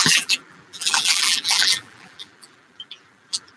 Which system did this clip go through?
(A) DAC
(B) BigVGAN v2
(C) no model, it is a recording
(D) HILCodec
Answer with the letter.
B